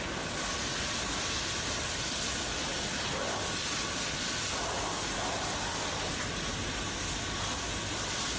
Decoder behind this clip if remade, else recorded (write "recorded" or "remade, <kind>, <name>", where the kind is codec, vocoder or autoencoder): recorded